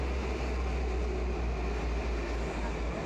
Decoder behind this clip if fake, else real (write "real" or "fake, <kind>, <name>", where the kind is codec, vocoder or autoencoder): real